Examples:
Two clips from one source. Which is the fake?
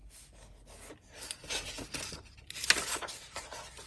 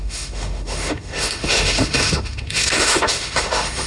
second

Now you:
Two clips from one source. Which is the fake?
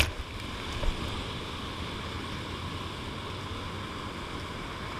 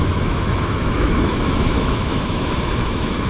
second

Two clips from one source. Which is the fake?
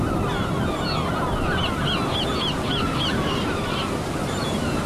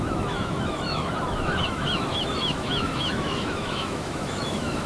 second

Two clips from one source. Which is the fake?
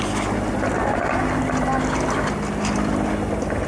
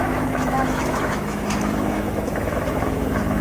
second